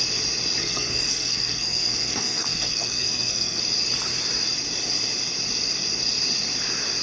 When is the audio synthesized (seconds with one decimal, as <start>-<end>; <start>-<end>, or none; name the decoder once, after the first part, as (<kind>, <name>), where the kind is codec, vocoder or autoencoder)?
0.6-3.6 (codec, SNAC)